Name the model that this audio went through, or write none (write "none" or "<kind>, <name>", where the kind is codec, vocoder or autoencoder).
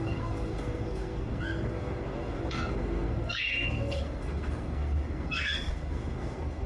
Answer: codec, SNAC